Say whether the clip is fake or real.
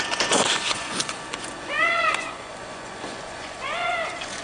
fake